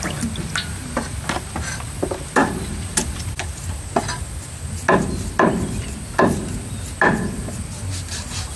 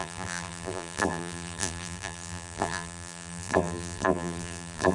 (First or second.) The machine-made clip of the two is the second